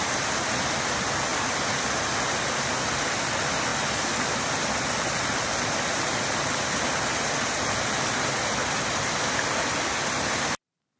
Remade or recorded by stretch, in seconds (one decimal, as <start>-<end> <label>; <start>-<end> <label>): 0.0-11.0 recorded